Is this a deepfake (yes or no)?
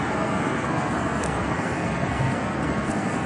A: yes